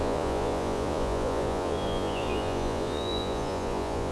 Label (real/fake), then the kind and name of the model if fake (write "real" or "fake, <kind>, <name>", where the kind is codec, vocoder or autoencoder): fake, vocoder, Vocos